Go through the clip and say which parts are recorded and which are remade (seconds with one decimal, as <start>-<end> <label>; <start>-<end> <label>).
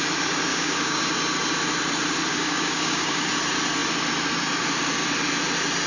0.0-0.5 recorded; 0.5-1.1 remade; 1.1-2.3 recorded; 2.3-3.3 remade; 3.3-5.9 recorded